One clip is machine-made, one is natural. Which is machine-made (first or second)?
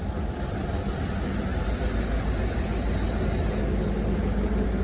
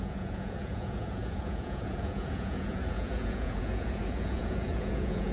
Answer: second